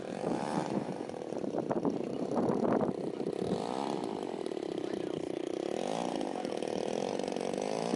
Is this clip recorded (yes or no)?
no